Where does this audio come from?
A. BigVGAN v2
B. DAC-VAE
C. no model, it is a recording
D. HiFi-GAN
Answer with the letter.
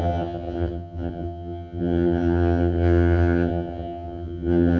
D